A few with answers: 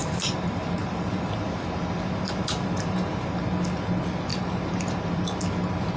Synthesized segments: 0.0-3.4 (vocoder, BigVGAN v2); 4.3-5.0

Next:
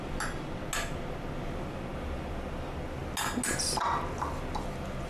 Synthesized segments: none

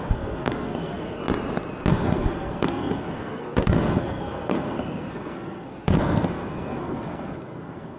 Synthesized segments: 0.0-1.2 (codec, SNAC); 1.9-8.0

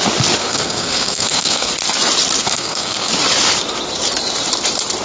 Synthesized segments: 0.4-1.7 (codec, SNAC); 2.4-3.1

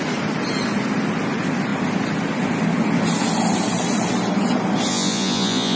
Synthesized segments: 4.9-5.8 (vocoder, Vocos)

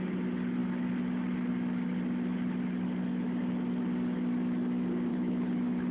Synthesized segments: 5.1-5.9 (codec, HILCodec)

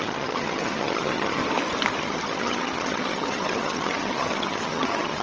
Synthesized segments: 0.0-1.4 (vocoder, HiFi-GAN); 2.0-5.2

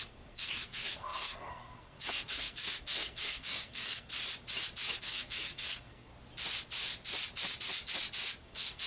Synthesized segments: 0.0-4.1 (codec, SNAC); 5.0-6.1; 8.4-8.9